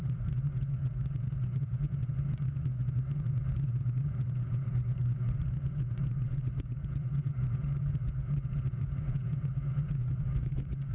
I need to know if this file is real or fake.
fake